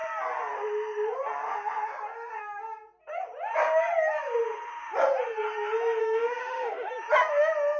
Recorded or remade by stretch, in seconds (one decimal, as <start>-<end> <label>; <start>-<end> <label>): 0.0-6.0 recorded; 6.0-6.9 remade; 6.9-7.8 recorded